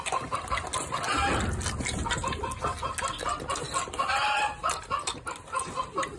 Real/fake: real